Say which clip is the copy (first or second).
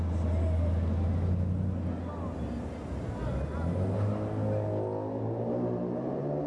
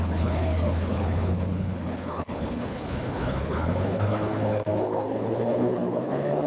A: second